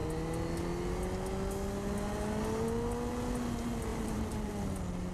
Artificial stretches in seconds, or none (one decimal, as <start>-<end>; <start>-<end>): 3.9-4.5